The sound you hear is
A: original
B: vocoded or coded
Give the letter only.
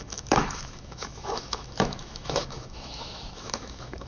B